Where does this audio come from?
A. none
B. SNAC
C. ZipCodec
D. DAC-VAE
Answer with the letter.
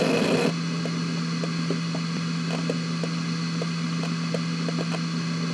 A